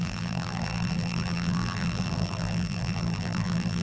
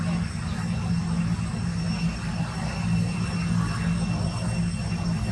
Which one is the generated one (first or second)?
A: first